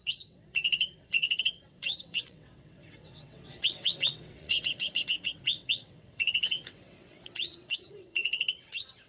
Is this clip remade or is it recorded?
remade